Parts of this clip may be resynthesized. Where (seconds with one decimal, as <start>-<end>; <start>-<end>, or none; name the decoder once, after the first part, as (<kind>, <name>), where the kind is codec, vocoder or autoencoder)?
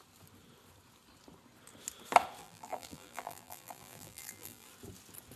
2.4-4.7 (vocoder, BigVGAN v2)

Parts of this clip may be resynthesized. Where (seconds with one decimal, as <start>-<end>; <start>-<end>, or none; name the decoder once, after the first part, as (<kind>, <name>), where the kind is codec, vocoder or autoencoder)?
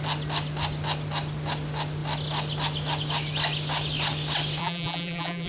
4.6-5.5 (vocoder, BigVGAN v2)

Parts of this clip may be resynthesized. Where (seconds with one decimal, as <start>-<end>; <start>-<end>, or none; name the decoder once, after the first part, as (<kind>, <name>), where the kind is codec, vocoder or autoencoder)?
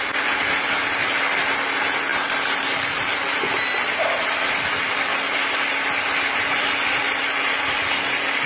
none